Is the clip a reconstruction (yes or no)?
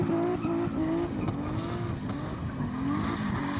no